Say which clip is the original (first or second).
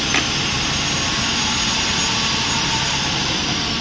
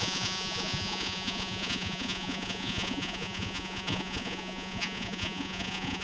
first